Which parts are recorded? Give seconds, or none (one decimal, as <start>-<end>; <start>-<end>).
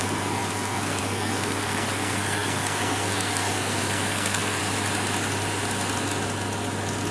4.6-7.1